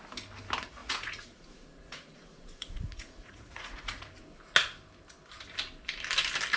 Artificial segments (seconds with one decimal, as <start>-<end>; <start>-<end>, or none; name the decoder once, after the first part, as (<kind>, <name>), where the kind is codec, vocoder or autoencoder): 0.8-4.1 (vocoder, Vocos)